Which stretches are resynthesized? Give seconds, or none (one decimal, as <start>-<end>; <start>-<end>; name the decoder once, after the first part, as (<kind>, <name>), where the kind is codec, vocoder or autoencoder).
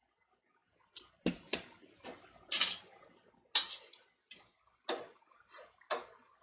none